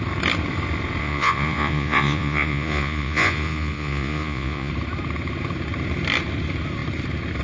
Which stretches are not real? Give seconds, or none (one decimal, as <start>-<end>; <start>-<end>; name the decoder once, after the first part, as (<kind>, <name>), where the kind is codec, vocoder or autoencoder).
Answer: 1.0-4.7 (vocoder, Vocos)